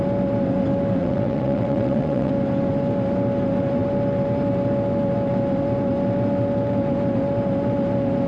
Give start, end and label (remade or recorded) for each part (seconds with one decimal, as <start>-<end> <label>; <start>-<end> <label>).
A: 0.0-1.0 recorded; 1.0-2.3 remade; 2.3-8.3 recorded